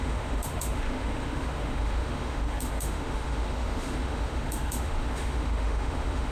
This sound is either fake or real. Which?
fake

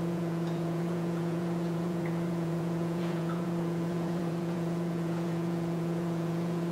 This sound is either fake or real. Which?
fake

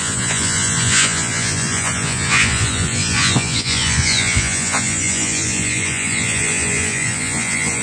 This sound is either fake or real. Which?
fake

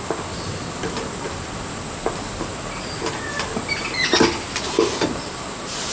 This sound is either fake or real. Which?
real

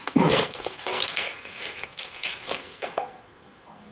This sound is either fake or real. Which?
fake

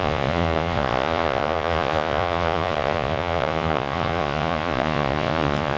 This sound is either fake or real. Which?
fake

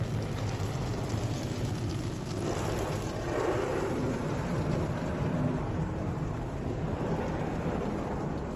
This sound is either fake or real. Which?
real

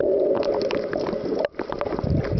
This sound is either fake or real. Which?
real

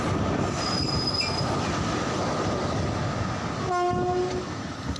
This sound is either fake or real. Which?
real